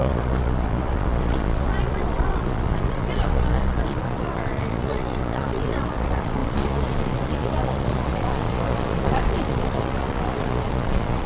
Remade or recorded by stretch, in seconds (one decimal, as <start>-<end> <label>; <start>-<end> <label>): 0.0-11.3 remade